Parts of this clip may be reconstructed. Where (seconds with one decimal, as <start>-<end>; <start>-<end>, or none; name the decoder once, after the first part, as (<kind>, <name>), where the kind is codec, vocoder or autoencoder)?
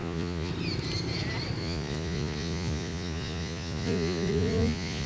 0.0-0.5 (vocoder, Vocos); 1.6-5.1